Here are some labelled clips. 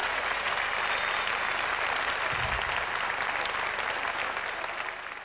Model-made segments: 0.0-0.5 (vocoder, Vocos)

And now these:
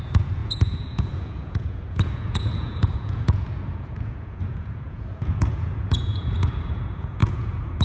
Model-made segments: 0.0-7.8 (vocoder, Vocos)

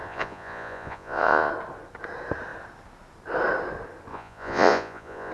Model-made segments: 0.0-1.5 (vocoder, Vocos); 4.1-5.3

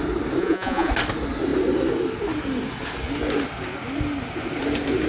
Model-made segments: 0.4-0.9 (vocoder, Vocos)

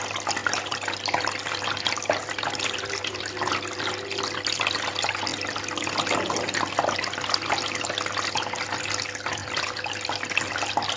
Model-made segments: none

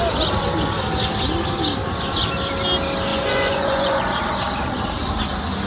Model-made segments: 3.1-4.0 (vocoder, Vocos)

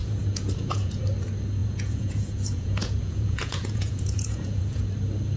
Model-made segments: 0.0-1.0 (vocoder, Vocos); 1.6-4.8

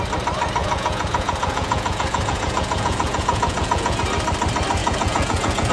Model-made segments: 0.6-4.0 (vocoder, Vocos); 4.8-5.7